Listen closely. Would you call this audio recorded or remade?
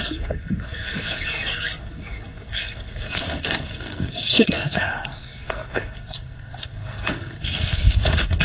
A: remade